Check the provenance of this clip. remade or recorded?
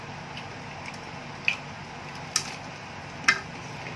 recorded